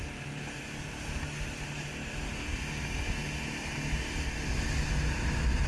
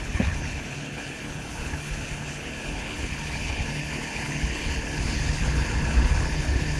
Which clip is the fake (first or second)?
second